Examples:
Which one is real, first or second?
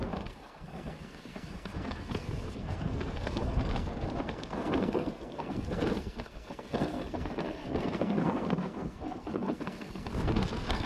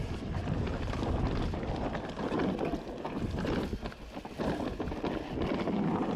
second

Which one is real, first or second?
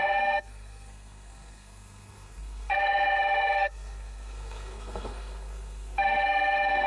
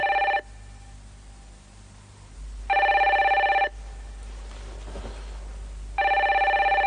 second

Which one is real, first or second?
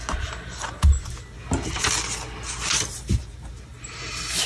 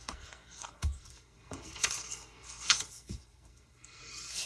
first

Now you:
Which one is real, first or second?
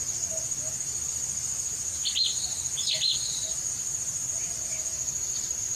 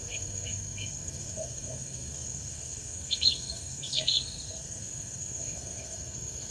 first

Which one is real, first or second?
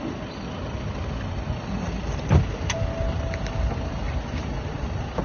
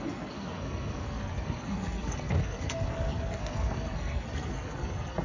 first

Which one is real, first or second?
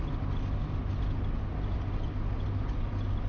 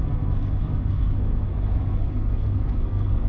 first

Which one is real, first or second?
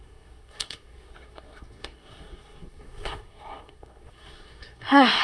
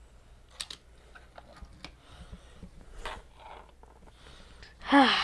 second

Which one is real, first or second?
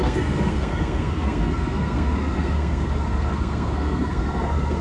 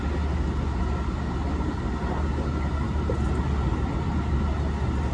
second